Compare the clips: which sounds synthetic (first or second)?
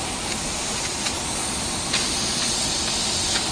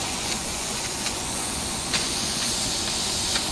second